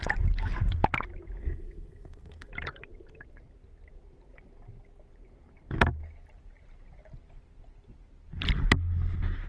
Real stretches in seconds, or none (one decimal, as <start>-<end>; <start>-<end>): 0.0-1.4; 2.5-9.5